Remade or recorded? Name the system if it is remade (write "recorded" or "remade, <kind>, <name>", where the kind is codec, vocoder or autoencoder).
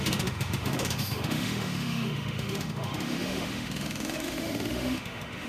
remade, autoencoder, DAC-VAE